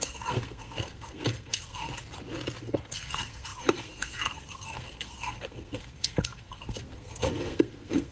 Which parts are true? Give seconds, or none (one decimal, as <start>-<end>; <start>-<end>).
1.9-2.6